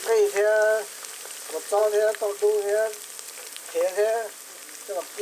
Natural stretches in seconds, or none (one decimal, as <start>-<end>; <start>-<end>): 0.0-5.2